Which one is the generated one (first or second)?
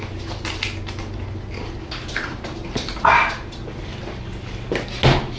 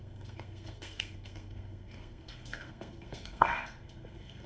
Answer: second